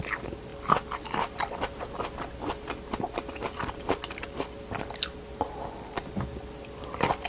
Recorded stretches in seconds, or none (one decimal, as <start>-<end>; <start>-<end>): 0.0-7.3